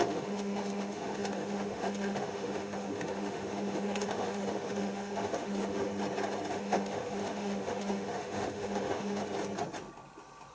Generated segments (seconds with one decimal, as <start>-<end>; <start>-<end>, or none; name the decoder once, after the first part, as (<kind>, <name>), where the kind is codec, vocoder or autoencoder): 0.0-5.9 (autoencoder, DAC-VAE); 6.5-9.2